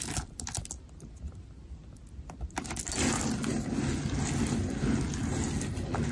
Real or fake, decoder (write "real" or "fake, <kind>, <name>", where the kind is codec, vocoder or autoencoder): real